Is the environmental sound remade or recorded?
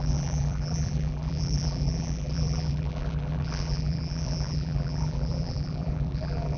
remade